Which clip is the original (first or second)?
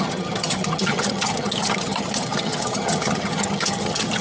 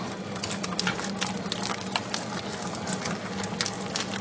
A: second